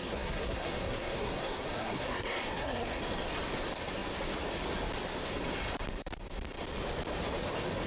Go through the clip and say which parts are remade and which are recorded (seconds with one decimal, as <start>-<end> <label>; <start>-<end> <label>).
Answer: 0.0-3.0 remade; 3.0-7.9 recorded